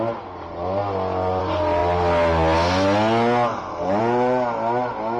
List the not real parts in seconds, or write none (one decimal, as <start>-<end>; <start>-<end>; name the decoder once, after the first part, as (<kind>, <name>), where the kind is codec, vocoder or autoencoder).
none